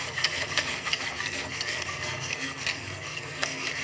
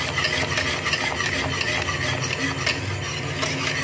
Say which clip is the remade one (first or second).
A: first